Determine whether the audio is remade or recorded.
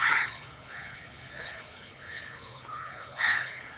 remade